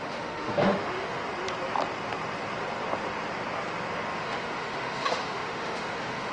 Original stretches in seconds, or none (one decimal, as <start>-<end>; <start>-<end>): 1.2-4.2